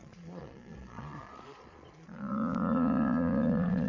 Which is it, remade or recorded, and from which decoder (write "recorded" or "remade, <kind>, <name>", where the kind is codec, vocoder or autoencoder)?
remade, vocoder, Vocos